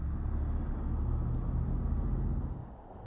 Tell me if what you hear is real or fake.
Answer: real